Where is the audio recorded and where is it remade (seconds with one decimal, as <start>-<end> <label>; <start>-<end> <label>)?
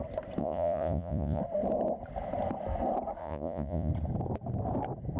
0.0-0.4 recorded; 0.4-1.4 remade; 1.4-3.2 recorded; 3.2-3.9 remade; 3.9-5.2 recorded